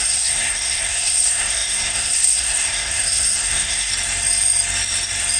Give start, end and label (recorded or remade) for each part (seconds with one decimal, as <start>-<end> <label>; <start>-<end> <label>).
0.0-3.9 remade; 3.9-5.4 recorded